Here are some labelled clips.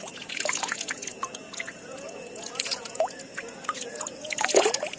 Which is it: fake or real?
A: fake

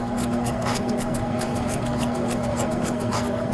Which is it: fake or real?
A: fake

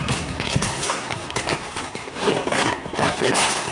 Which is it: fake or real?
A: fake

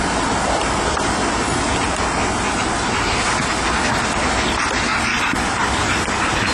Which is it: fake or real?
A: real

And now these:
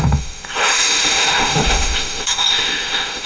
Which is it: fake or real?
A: fake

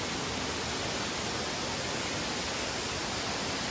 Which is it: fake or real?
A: real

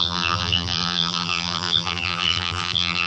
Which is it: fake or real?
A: fake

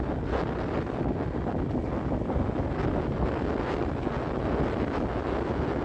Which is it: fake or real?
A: real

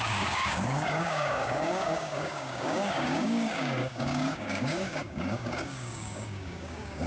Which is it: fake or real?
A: fake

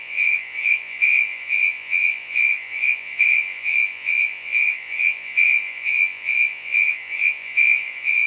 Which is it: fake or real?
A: fake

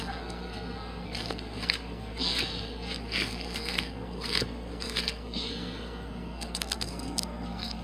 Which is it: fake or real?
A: fake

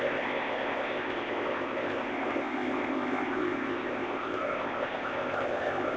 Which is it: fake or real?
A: fake